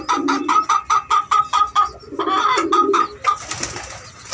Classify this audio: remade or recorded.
recorded